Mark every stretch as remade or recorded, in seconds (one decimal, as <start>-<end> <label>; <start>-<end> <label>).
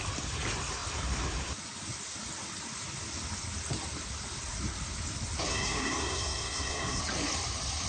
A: 0.0-5.5 recorded; 5.5-7.0 remade; 7.0-7.9 recorded